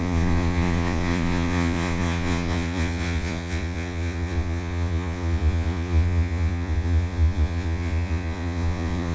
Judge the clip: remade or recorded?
remade